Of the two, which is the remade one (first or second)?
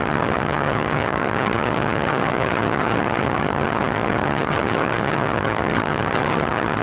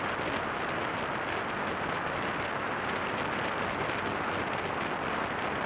first